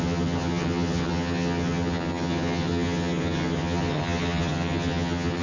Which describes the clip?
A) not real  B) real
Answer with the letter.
A